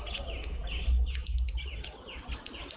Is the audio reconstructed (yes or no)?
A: no